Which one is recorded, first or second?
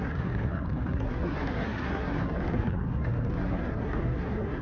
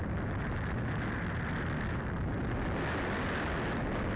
second